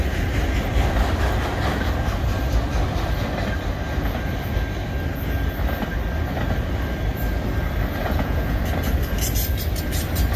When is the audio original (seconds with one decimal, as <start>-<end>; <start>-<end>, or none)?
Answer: 0.0-8.0; 8.6-10.4